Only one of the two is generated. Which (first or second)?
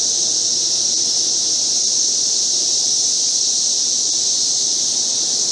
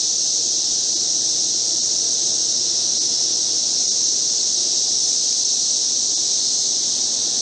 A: first